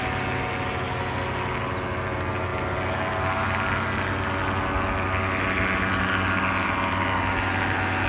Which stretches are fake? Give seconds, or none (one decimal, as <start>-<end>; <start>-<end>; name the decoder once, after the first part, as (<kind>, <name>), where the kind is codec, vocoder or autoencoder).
none